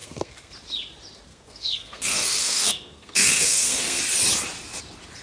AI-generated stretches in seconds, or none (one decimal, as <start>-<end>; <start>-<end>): 0.0-0.5; 1.3-4.0